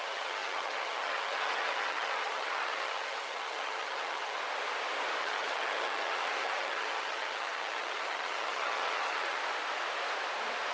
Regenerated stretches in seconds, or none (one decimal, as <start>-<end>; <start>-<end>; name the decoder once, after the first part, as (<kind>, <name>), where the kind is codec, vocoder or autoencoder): 0.0-4.4 (vocoder, HiFi-GAN); 5.2-9.4